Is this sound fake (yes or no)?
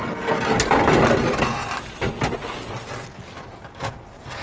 no